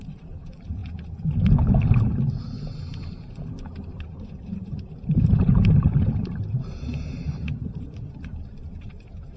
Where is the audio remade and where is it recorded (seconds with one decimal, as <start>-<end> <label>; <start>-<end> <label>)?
0.0-0.8 remade; 0.8-3.6 recorded; 3.6-9.4 remade